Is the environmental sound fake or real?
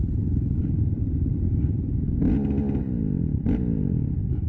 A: real